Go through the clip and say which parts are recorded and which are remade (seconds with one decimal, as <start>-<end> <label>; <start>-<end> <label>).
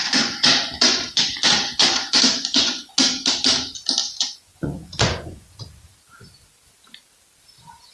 0.0-2.9 remade; 2.9-4.0 recorded; 4.0-5.6 remade; 5.6-7.9 recorded